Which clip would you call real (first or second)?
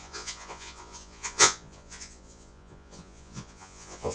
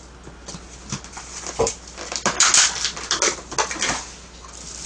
second